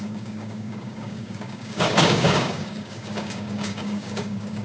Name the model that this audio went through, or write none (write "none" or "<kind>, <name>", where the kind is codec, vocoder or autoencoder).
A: codec, DAC